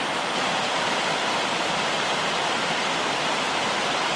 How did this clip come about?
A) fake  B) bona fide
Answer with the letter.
B